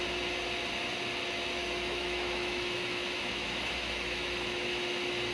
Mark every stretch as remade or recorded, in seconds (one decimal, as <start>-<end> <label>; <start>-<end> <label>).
0.0-1.6 recorded; 1.6-4.8 remade; 4.8-5.3 recorded